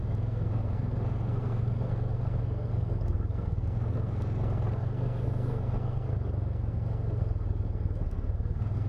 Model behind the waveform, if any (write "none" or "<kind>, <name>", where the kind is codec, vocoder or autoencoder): codec, SNAC